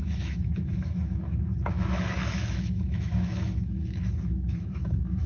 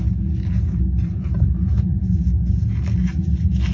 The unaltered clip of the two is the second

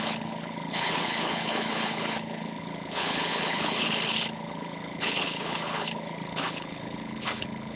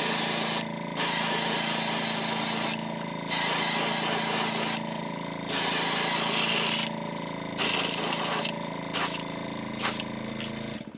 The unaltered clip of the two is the second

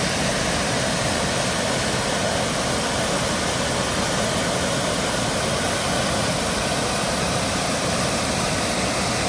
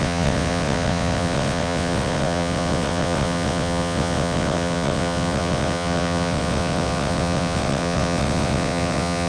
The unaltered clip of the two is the first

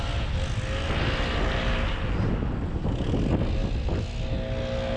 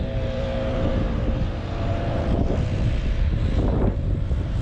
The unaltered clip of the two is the first